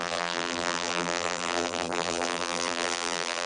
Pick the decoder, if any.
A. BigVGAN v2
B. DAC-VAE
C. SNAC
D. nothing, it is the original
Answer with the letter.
A